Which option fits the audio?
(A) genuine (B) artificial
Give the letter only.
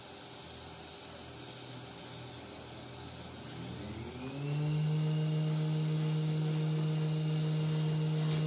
A